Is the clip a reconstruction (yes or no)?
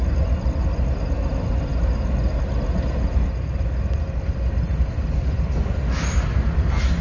no